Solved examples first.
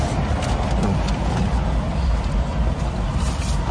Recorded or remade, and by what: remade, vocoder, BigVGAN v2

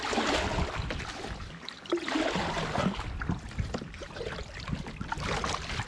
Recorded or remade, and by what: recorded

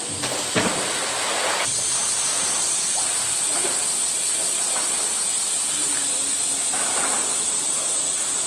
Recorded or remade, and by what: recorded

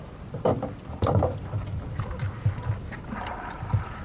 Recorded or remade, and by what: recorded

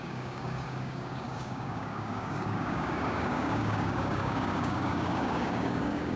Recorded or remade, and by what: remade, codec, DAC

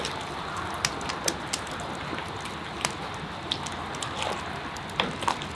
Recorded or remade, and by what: recorded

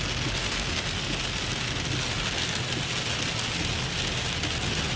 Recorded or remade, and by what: recorded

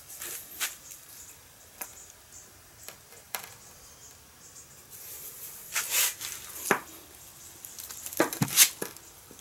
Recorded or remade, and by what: recorded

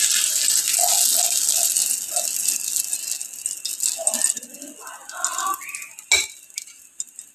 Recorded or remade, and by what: recorded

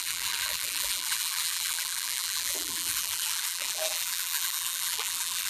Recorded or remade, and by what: remade, vocoder, BigVGAN v2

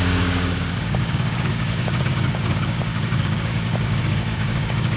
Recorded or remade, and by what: remade, codec, DAC